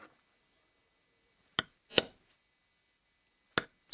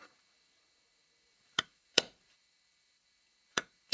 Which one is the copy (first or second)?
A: second